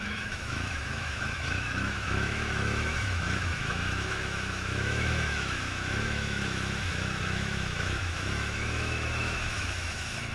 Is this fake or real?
fake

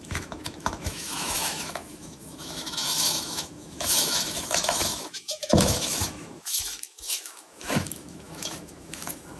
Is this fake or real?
fake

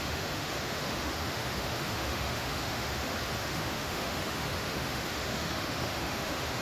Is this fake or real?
fake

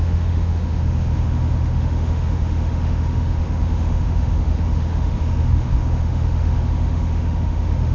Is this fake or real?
fake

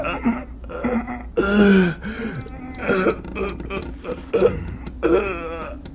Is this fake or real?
real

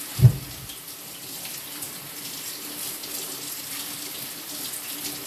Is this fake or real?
real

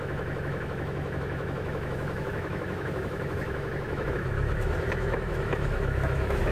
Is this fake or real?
fake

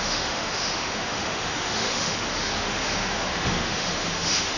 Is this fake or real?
fake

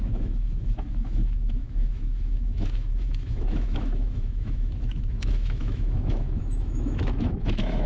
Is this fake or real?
fake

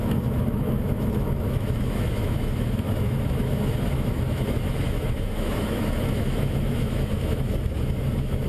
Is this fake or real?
fake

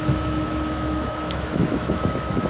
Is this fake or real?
fake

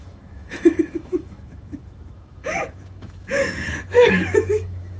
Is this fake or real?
fake